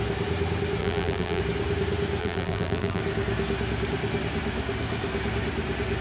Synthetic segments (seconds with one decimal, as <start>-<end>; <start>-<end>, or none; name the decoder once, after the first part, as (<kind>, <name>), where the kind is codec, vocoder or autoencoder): 0.8-1.4 (vocoder, BigVGAN v2); 2.2-3.0